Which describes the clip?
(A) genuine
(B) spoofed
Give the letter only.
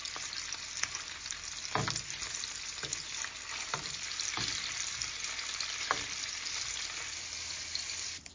A